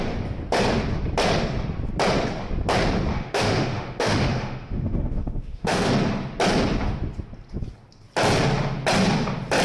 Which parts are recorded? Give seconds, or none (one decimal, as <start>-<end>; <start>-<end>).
0.0-3.1; 5.9-9.6